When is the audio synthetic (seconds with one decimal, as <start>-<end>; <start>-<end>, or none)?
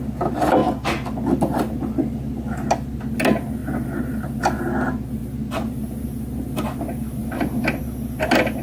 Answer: none